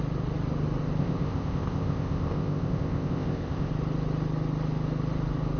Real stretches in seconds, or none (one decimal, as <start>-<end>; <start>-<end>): 0.0-1.0; 3.7-5.6